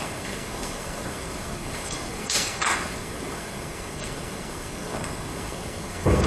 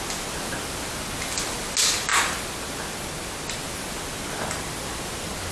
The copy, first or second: first